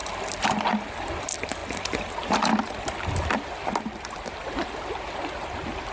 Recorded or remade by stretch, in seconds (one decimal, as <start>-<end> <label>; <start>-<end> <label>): 0.0-5.9 recorded